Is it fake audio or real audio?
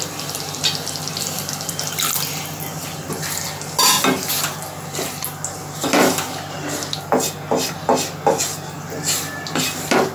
real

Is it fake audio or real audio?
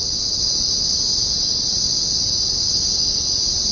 real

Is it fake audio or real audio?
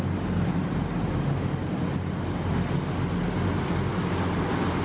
real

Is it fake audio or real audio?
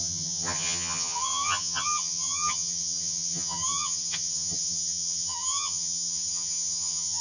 fake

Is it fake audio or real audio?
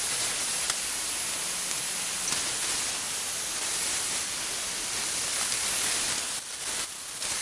real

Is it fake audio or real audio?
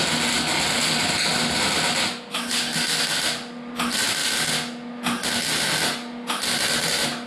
real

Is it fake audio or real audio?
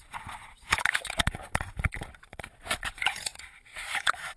fake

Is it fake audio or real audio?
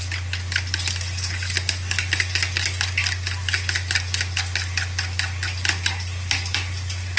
real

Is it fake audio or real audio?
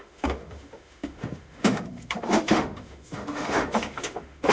fake